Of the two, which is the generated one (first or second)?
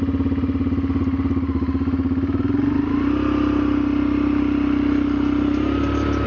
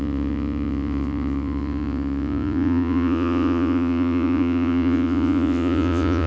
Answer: second